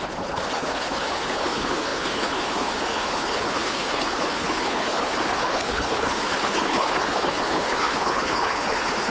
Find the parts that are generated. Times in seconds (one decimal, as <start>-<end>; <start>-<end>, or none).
0.0-9.1